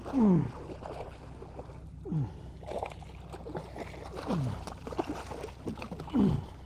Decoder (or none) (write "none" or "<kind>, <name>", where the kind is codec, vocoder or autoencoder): none